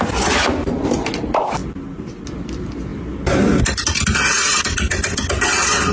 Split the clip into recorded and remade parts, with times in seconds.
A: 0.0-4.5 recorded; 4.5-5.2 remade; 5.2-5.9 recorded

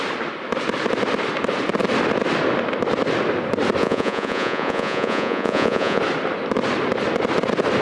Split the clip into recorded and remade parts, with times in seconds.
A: 0.0-3.8 recorded; 3.8-6.0 remade; 6.0-7.8 recorded

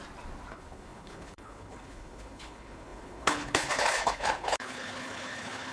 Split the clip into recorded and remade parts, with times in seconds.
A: 0.0-0.5 recorded; 0.5-5.7 remade